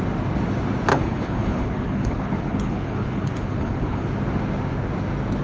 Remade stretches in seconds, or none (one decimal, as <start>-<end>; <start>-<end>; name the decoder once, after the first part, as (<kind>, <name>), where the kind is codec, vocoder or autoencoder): 0.9-4.1 (codec, HILCodec)